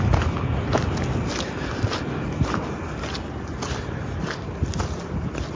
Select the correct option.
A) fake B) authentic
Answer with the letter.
B